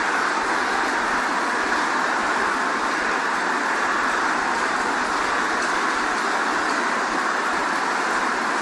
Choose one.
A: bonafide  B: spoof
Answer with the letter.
A